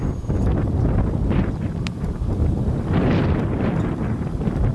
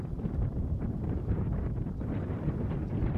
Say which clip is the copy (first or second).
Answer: second